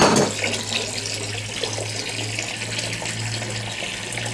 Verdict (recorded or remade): recorded